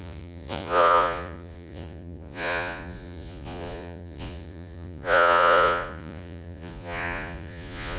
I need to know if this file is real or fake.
fake